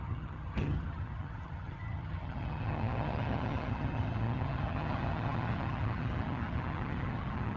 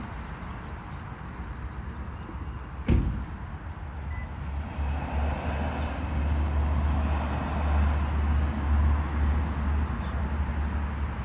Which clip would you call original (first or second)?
second